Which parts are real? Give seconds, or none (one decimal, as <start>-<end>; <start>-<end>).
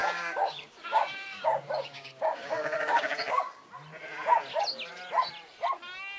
3.7-6.2